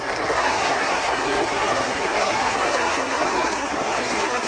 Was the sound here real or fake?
fake